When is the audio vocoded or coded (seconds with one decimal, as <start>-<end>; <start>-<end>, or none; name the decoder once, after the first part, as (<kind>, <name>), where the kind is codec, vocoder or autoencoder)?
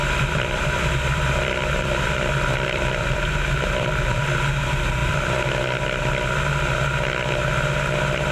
0.0-4.2 (vocoder, BigVGAN v2); 5.0-5.5